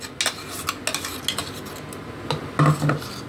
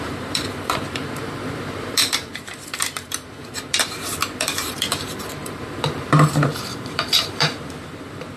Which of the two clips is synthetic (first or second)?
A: second